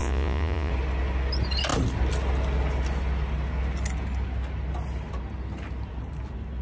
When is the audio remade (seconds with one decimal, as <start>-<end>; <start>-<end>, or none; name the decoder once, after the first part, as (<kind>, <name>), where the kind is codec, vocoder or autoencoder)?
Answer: 0.0-0.7 (vocoder, Vocos)

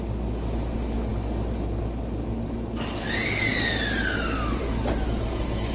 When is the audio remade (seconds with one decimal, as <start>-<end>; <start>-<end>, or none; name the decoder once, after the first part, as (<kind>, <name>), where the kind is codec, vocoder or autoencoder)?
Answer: none

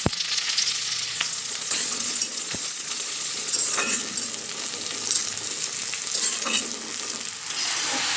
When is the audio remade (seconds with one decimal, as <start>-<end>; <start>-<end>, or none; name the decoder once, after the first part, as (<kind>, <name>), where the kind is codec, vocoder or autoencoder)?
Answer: 0.0-4.0 (vocoder, Vocos)

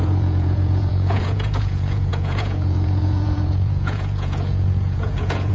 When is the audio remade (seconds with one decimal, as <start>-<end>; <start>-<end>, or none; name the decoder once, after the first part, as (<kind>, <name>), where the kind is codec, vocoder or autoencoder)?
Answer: 0.0-5.5 (vocoder, Vocos)

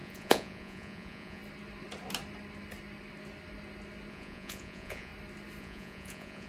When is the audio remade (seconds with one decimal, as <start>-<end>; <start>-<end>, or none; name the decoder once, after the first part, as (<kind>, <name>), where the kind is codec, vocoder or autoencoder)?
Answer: 0.0-1.4 (vocoder, Vocos); 4.1-5.1; 5.6-6.5

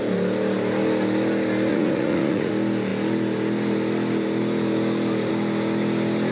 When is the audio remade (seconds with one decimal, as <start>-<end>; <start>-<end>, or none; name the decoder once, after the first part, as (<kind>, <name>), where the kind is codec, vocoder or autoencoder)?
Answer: 1.7-2.5 (vocoder, Vocos)